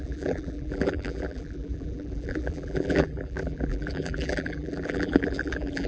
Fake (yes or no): yes